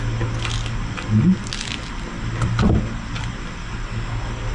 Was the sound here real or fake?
real